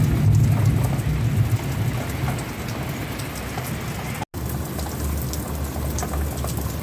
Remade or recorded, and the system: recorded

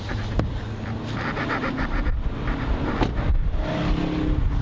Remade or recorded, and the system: recorded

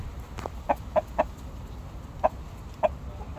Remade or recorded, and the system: recorded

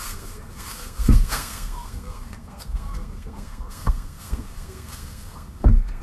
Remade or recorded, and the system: remade, codec, SNAC